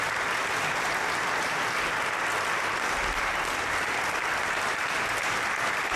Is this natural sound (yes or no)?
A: yes